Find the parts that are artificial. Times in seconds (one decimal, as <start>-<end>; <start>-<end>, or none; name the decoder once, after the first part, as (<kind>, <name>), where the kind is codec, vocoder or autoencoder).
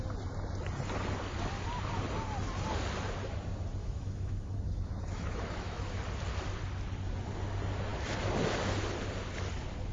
3.8-6.0 (autoencoder, DAC-VAE)